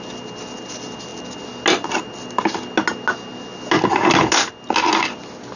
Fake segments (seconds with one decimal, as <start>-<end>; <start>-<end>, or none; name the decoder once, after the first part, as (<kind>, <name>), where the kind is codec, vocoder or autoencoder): none